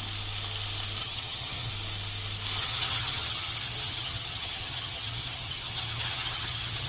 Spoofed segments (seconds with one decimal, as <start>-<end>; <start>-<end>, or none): 1.0-1.7; 2.6-6.9